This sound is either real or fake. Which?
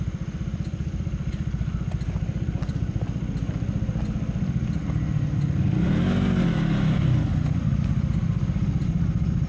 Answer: real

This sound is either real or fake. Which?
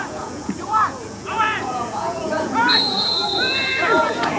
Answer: fake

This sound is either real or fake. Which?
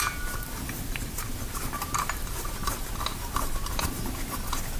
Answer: real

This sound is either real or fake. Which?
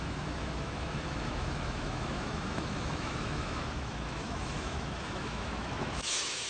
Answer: fake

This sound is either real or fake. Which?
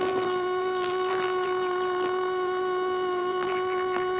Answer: fake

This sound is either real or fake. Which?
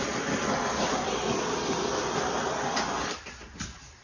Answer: real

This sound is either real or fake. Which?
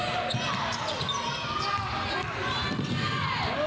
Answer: real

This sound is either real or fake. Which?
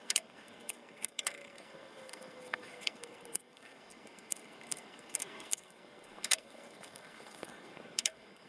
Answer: fake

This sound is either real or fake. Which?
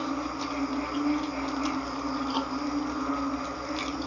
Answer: real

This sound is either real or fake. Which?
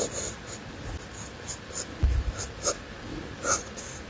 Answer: real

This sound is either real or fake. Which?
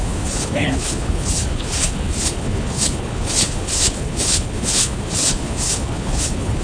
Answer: fake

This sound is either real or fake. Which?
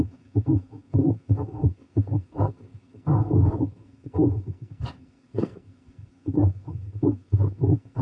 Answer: fake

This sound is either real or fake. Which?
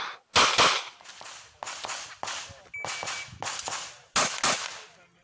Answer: real